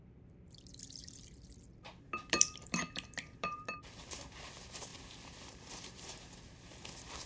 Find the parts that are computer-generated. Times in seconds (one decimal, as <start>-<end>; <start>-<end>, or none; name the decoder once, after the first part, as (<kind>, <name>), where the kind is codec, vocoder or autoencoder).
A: 0.0-7.3 (vocoder, BigVGAN v2)